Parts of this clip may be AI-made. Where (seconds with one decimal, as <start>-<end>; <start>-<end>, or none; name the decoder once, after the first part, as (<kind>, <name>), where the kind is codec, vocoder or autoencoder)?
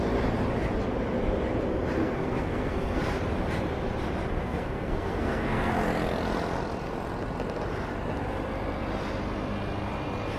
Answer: 2.0-3.0 (codec, SNAC); 4.4-5.7